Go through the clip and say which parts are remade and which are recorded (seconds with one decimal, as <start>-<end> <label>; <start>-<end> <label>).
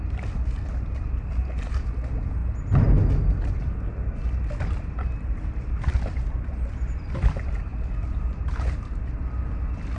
0.0-7.7 recorded; 7.7-9.0 remade; 9.0-10.0 recorded